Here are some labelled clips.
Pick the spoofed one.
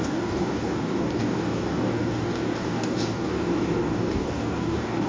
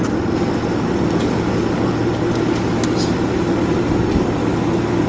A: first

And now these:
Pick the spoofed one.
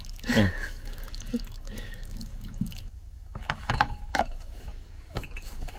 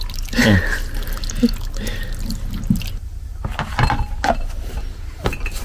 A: first